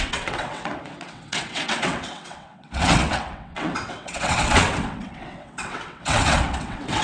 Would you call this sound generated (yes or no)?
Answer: yes